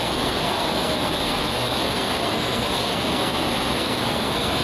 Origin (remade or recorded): remade